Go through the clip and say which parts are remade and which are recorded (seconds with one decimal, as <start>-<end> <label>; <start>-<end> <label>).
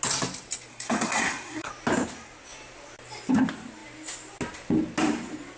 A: 0.0-0.7 recorded; 0.7-1.7 remade; 1.7-5.6 recorded